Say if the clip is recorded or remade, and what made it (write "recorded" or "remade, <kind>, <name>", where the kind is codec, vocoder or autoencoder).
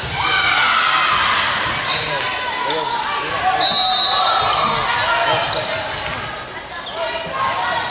recorded